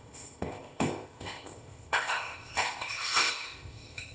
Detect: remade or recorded remade